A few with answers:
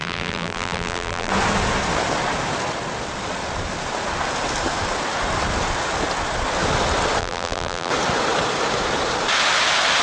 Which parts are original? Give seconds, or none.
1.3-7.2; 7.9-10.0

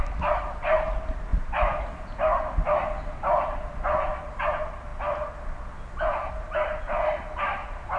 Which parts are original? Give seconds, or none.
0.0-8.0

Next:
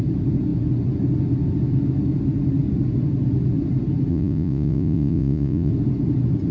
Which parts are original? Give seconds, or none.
0.0-4.1; 5.7-6.5